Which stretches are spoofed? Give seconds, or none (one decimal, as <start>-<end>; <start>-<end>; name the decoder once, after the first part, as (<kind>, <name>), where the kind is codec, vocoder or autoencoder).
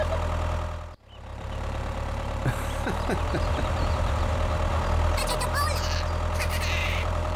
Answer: 1.3-4.2 (vocoder, BigVGAN v2); 6.8-7.4